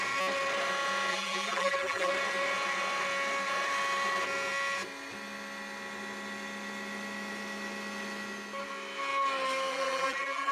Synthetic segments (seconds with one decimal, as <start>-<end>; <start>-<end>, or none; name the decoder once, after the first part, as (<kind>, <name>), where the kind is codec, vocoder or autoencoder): 1.1-2.1 (vocoder, BigVGAN v2); 9.7-10.5